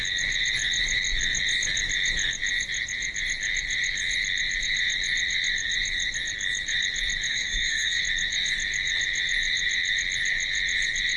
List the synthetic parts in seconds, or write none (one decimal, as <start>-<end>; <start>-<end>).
7.3-8.0

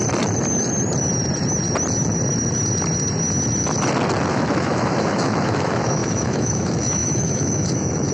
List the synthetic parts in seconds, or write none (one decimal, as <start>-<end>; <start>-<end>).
4.3-8.1

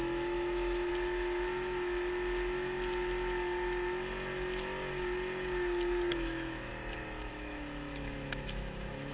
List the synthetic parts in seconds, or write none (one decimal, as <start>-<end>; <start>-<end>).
0.0-0.9; 6.1-6.7; 7.3-9.1

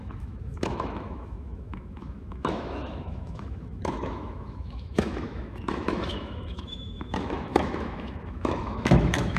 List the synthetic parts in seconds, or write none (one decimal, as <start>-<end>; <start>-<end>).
0.0-9.4